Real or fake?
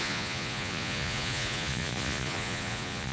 fake